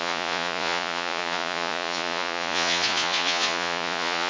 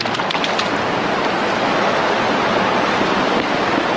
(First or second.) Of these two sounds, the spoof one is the first